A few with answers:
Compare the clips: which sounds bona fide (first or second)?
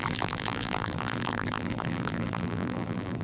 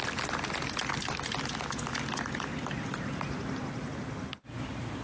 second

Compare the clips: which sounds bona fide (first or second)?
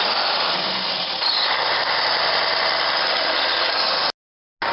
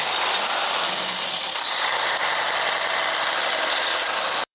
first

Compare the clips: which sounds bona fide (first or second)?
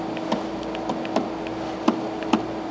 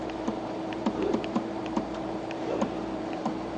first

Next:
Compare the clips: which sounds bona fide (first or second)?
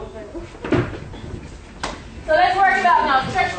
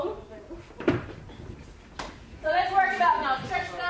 first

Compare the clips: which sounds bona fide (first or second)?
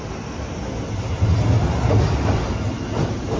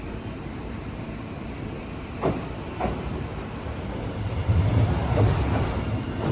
first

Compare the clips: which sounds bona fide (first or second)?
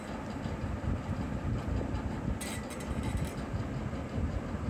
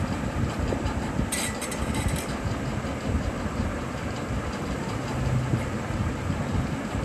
first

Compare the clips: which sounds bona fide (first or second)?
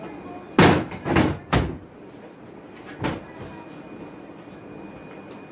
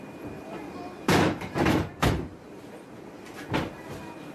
first